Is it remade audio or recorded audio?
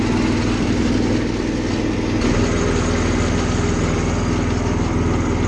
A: recorded